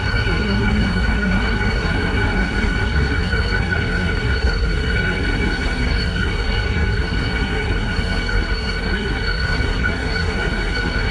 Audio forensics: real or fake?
fake